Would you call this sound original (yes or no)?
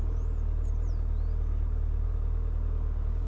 yes